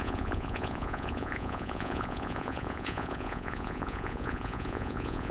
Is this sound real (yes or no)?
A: no